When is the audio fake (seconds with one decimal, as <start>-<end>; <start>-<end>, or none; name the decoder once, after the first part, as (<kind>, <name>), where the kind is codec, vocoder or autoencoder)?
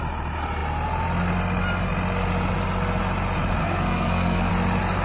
3.6-4.5 (codec, SNAC)